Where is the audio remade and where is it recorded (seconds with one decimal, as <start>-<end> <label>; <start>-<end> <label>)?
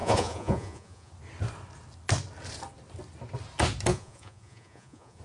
0.0-1.1 remade; 1.1-3.9 recorded; 3.9-5.2 remade